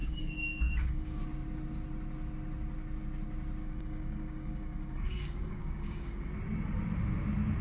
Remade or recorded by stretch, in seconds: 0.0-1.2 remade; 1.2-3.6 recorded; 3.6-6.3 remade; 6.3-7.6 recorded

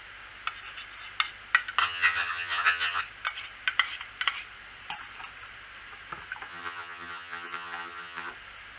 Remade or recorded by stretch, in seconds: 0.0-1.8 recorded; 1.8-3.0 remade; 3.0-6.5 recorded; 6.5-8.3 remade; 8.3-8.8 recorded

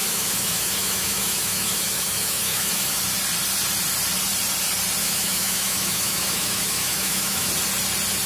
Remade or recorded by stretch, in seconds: 0.0-3.0 remade; 3.0-5.0 recorded; 5.0-7.5 remade; 7.5-8.3 recorded

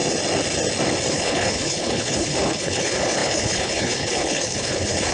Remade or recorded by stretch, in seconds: 0.0-1.1 recorded; 1.1-5.1 remade

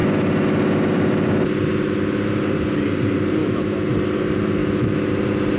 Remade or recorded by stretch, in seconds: 0.0-3.4 recorded; 3.4-3.9 remade; 3.9-4.6 recorded; 4.6-5.1 remade; 5.1-5.6 recorded

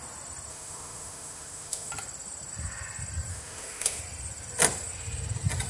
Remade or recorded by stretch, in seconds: 0.0-0.5 recorded; 0.5-1.9 remade; 1.9-3.3 recorded; 3.3-4.0 remade; 4.0-5.7 recorded